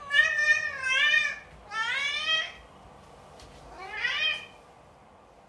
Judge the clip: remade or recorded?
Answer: recorded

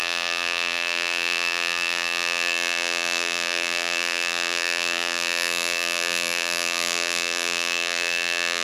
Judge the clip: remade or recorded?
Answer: remade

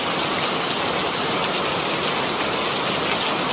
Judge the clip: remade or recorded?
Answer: recorded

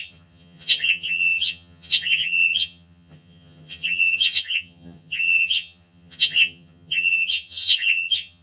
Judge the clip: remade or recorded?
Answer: remade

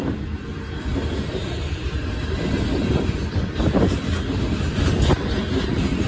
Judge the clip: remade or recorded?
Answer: recorded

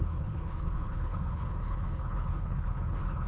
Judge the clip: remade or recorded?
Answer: remade